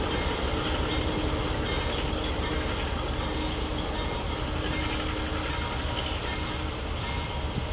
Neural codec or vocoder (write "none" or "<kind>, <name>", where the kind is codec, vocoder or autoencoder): none